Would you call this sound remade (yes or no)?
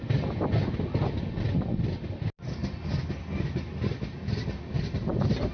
no